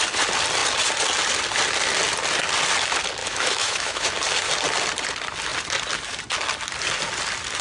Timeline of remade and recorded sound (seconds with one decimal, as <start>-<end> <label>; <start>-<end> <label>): 0.0-3.2 recorded; 3.2-4.1 remade; 4.1-7.6 recorded

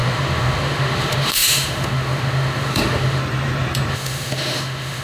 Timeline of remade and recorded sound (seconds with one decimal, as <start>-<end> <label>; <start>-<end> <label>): 0.0-3.2 remade; 3.2-3.9 recorded; 3.9-5.0 remade